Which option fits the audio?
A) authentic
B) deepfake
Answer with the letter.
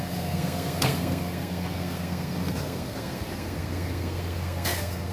B